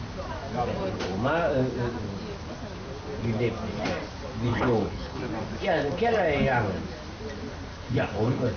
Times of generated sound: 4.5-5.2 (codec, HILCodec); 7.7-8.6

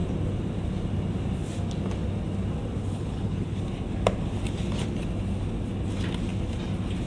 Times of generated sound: 2.8-3.6 (codec, HILCodec)

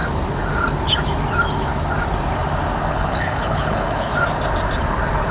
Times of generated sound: 2.9-4.1 (codec, HILCodec)

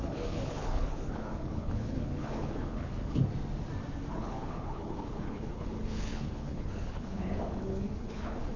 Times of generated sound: 0.0-3.2 (codec, HILCodec); 4.1-8.6

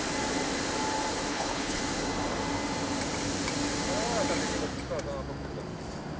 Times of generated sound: 1.3-1.8 (codec, HILCodec)

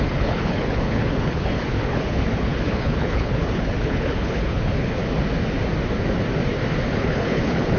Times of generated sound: 0.0-5.0 (codec, HILCodec); 6.9-7.8

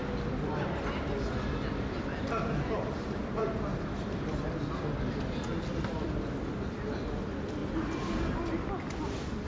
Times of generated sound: none